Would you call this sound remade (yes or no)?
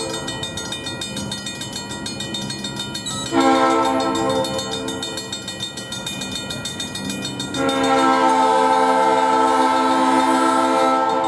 no